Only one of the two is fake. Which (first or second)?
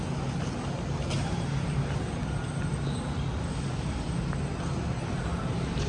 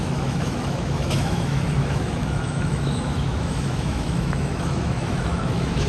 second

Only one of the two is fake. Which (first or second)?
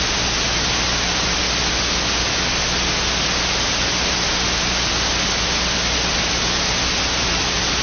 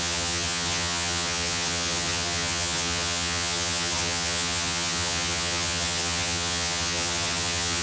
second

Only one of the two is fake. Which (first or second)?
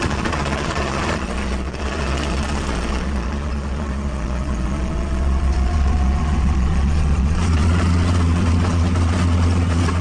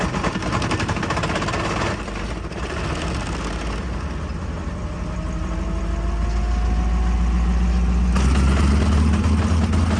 first